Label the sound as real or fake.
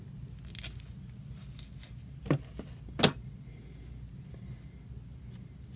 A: real